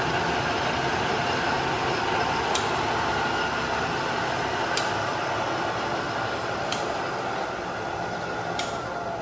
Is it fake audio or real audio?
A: real